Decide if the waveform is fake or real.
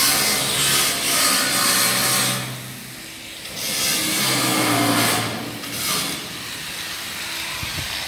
real